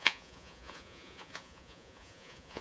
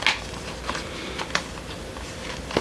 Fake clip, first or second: first